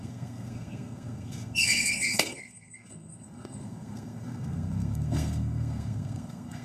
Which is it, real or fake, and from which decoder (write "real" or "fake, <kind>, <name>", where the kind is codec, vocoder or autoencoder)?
fake, codec, SNAC